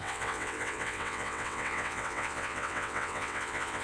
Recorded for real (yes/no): no